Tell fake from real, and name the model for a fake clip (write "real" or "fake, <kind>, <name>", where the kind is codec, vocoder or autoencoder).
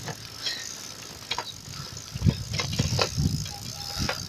real